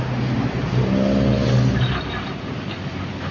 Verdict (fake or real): real